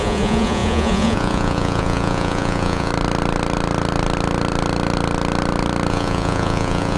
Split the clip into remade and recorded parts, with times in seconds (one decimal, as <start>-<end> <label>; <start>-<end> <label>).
0.0-2.9 remade; 2.9-5.9 recorded; 5.9-7.0 remade